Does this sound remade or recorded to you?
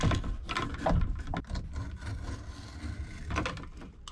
recorded